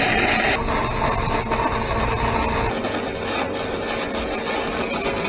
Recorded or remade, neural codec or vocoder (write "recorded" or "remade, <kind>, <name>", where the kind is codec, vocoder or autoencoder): recorded